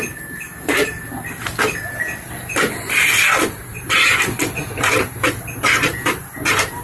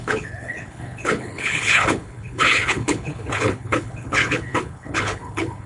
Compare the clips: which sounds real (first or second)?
first